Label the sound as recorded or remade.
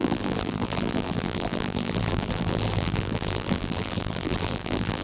remade